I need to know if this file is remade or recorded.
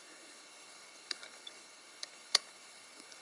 remade